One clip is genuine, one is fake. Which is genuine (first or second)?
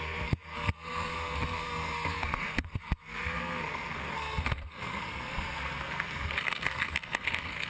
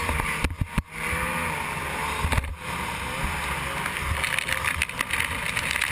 second